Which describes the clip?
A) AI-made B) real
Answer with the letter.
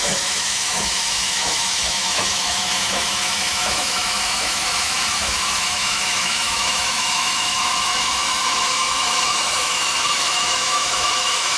A